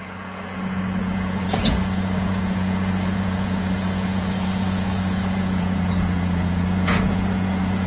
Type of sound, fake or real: fake